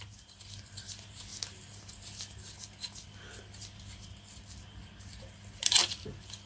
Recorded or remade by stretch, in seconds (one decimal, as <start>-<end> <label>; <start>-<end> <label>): 0.0-6.5 recorded